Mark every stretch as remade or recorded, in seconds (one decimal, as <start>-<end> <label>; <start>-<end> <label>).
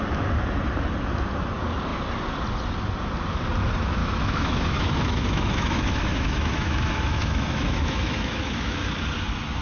0.0-4.0 recorded; 4.0-8.9 remade; 8.9-9.6 recorded